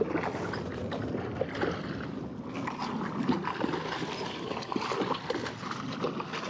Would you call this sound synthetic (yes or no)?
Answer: no